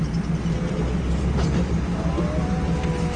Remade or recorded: recorded